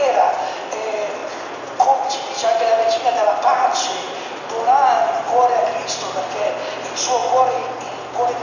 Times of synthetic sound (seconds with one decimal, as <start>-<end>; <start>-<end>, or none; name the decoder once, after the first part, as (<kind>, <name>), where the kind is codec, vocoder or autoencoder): none